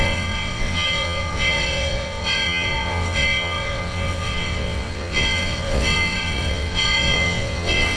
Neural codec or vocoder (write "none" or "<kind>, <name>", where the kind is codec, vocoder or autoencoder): vocoder, WaveNeXt